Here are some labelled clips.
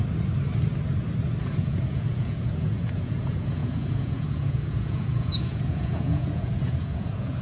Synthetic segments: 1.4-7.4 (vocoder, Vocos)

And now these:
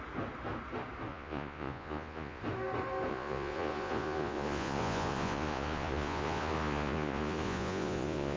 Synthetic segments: 1.1-2.4 (vocoder, Vocos); 3.1-8.4

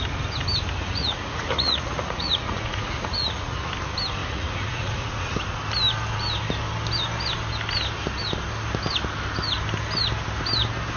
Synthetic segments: 0.8-3.7 (vocoder, Vocos); 4.2-5.4

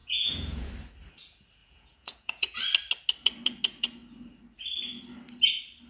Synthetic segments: 0.0-0.7 (vocoder, Vocos); 1.6-2.6

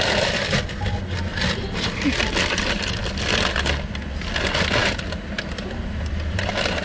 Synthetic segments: none